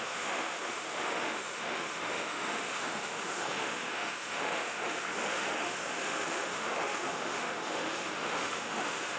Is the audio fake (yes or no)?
yes